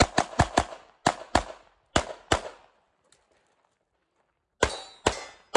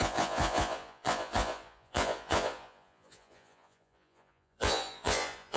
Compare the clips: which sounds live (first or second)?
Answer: first